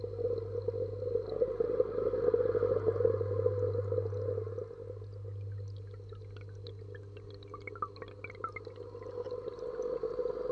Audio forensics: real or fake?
real